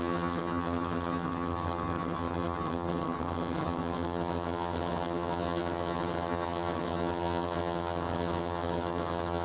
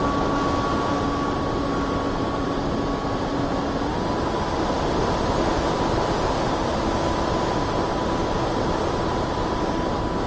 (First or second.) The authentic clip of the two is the second